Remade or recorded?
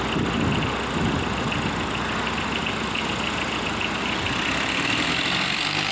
recorded